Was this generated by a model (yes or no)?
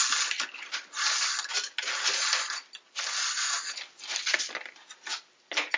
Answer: no